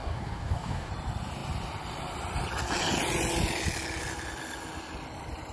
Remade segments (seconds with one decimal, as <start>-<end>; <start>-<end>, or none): 0.0-0.9